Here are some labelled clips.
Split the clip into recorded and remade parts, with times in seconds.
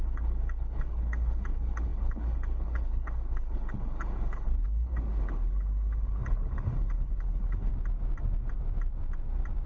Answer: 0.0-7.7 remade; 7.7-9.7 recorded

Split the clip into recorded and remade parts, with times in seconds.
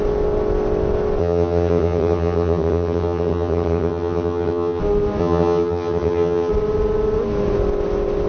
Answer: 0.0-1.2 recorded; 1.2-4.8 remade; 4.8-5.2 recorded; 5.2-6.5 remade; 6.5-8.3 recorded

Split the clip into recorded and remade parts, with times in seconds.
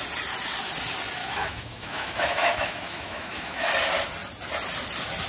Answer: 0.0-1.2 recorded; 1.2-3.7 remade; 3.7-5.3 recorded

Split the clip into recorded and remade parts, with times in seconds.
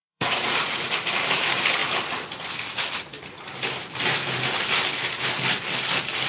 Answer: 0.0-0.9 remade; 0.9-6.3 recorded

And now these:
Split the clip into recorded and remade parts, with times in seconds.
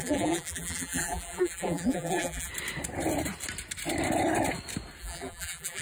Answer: 0.0-2.5 remade; 2.5-5.0 recorded; 5.0-5.8 remade